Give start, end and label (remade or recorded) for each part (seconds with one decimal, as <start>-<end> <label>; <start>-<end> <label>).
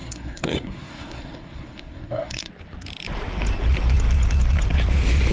0.0-2.5 remade; 2.5-5.3 recorded